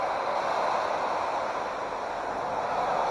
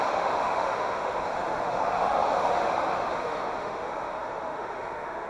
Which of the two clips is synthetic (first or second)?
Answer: second